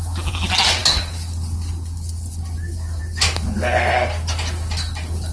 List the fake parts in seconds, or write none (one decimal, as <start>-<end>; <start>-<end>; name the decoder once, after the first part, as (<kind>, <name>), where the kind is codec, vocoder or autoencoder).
none